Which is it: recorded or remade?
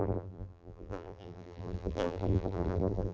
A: remade